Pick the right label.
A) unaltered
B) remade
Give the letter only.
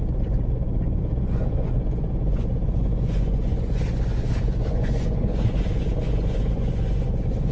B